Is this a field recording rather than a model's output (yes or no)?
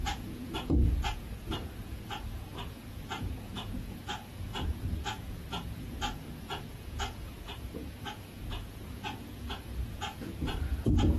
no